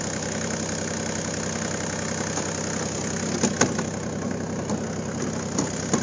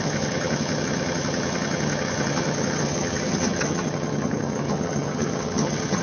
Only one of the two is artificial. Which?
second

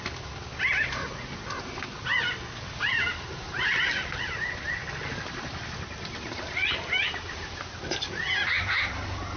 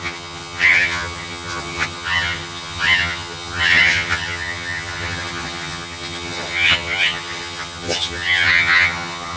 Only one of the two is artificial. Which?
second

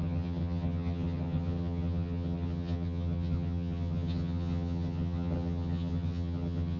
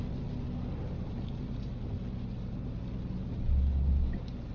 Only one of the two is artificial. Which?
first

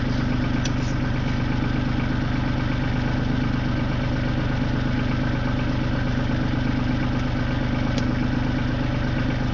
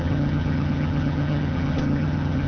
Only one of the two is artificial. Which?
second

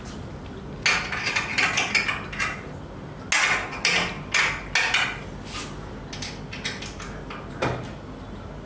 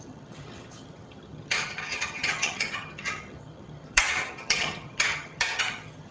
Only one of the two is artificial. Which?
second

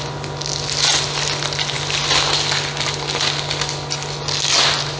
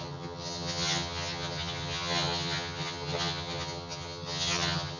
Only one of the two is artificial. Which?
second